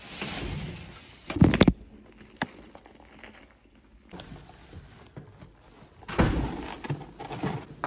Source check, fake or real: real